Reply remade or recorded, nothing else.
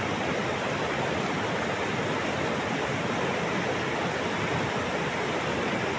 recorded